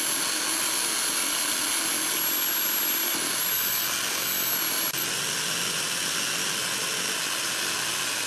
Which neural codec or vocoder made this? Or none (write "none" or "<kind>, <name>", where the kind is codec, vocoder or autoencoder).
none